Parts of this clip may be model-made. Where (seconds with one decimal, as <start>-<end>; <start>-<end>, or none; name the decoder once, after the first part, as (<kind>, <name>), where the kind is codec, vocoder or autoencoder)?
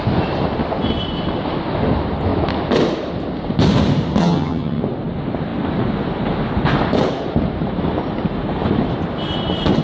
4.2-4.8 (vocoder, HiFi-GAN)